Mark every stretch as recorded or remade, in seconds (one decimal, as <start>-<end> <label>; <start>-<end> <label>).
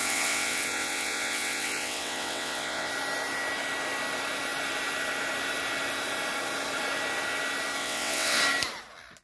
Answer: 0.0-2.9 remade; 2.9-7.8 recorded; 7.8-8.4 remade; 8.4-9.2 recorded